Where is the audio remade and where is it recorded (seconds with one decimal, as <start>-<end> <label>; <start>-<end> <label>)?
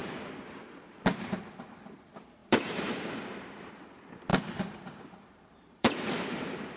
0.0-2.4 recorded; 2.4-3.7 remade; 3.7-4.3 recorded; 4.3-6.0 remade; 6.0-6.8 recorded